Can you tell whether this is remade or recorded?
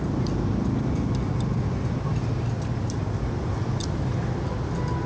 recorded